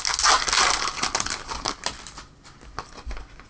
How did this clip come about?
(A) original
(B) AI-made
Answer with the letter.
A